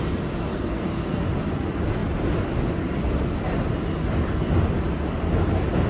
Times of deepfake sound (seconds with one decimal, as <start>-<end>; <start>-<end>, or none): 0.5-1.3